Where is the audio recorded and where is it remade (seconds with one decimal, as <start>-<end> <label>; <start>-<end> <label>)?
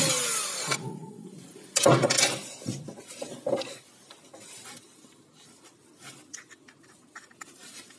0.0-8.0 recorded